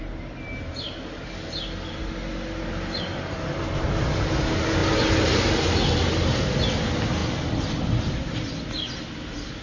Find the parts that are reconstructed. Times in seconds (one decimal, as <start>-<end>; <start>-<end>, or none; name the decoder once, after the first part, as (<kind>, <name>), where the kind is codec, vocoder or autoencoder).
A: none